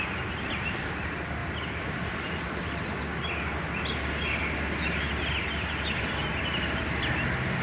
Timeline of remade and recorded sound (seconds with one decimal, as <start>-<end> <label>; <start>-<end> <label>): 0.0-7.6 recorded